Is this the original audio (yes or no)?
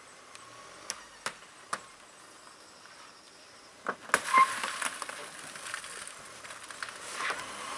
yes